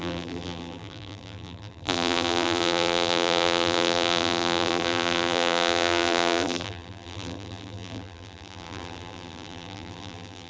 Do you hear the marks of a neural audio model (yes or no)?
yes